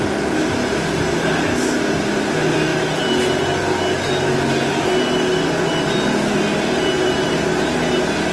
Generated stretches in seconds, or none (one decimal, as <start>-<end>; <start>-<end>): none